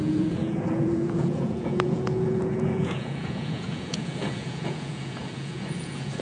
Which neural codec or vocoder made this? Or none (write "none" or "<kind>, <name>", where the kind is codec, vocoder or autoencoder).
vocoder, Vocos